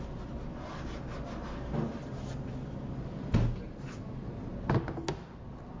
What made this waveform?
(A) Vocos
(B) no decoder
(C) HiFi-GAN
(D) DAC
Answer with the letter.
B